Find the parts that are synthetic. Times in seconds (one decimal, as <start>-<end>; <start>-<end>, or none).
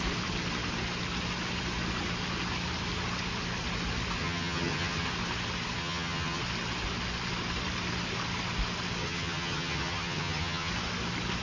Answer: 4.2-5.1; 5.8-6.4; 9.0-10.7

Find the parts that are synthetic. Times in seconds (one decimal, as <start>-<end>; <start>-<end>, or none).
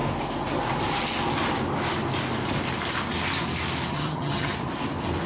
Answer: 3.9-4.5